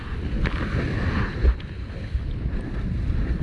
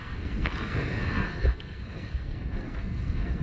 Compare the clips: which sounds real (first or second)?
first